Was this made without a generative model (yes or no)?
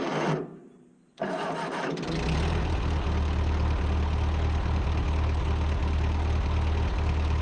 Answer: yes